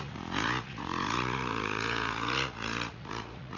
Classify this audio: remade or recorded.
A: remade